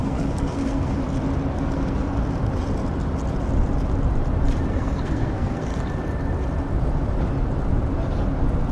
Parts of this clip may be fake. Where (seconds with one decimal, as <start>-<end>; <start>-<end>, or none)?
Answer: 0.0-1.0; 1.6-2.1; 4.7-5.7